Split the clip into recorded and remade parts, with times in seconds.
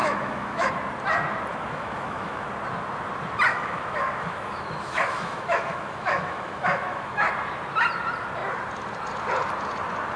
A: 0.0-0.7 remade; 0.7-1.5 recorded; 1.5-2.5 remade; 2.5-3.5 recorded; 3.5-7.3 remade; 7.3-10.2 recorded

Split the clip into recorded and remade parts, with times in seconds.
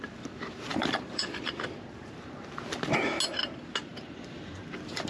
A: 0.0-0.7 recorded; 0.7-1.5 remade; 1.5-3.9 recorded; 3.9-5.1 remade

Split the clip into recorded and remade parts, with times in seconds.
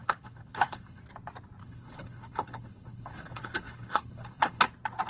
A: 0.0-1.0 remade; 1.0-1.6 recorded; 1.6-4.6 remade; 4.6-5.1 recorded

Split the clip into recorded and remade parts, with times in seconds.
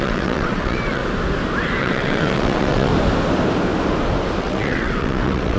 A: 0.0-1.0 remade; 1.0-1.8 recorded; 1.8-2.9 remade; 2.9-4.4 recorded; 4.4-5.6 remade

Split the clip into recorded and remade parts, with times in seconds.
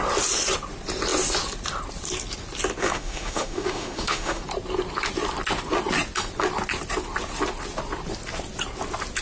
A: 0.0-2.8 recorded; 2.8-4.4 remade; 4.4-9.2 recorded